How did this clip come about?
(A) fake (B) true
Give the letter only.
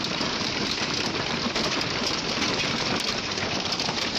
A